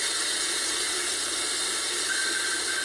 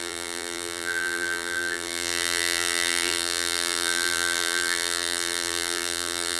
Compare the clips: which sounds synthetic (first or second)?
second